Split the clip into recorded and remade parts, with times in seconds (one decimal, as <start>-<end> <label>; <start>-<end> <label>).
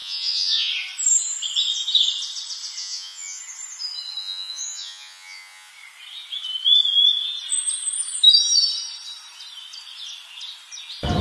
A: 0.0-0.7 remade; 0.7-2.8 recorded; 2.8-3.4 remade; 3.4-4.2 recorded; 4.2-5.7 remade; 5.7-11.2 recorded